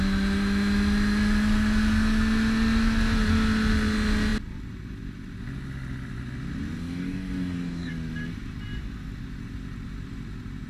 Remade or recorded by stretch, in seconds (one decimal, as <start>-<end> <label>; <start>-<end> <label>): 0.0-6.8 recorded; 6.8-7.9 remade; 7.9-10.7 recorded